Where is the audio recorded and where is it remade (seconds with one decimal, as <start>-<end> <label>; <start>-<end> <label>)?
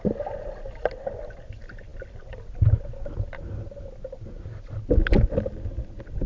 0.0-6.3 recorded